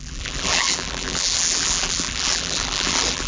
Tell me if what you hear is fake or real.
fake